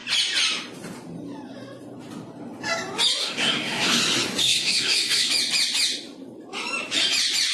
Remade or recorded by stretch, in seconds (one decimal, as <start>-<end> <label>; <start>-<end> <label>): 0.0-3.2 recorded; 3.2-4.0 remade; 4.0-4.4 recorded; 4.4-5.3 remade; 5.3-7.5 recorded